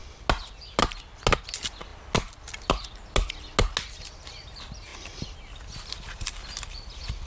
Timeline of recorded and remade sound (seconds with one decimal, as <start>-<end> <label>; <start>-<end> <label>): 0.0-7.3 recorded